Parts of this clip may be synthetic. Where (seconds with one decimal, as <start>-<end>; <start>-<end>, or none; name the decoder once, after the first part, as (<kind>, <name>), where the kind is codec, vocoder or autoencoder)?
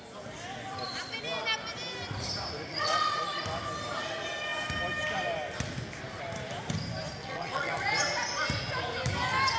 2.7-3.2 (vocoder, WaveNeXt); 7.2-7.7